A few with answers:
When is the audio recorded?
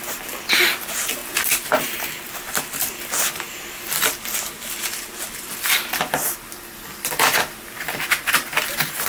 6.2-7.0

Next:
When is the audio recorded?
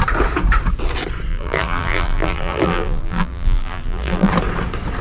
0.0-1.3; 4.3-5.0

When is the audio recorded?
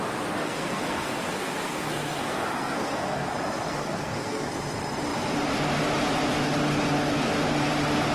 0.0-0.4; 3.3-3.7; 4.5-8.1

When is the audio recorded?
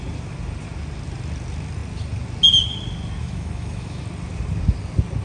0.0-3.2; 4.0-5.2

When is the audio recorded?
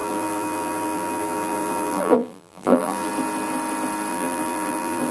3.1-4.1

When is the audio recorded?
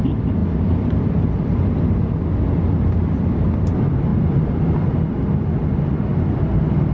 0.0-6.9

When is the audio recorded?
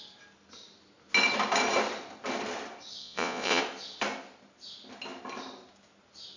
0.0-3.0; 3.6-6.4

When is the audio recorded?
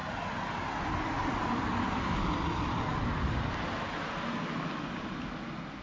0.0-5.8